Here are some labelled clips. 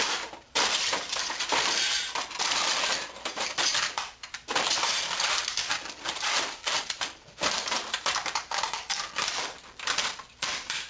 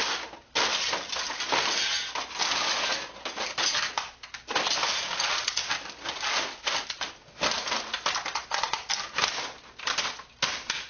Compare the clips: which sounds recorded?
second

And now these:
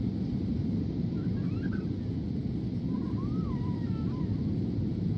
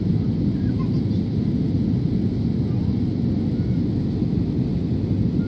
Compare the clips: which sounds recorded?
second